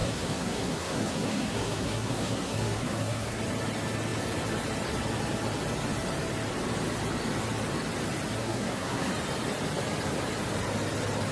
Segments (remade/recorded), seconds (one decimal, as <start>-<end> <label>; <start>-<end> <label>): 0.0-3.4 remade; 3.4-8.4 recorded; 8.4-9.1 remade; 9.1-11.3 recorded